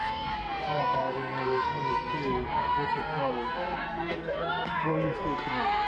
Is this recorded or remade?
remade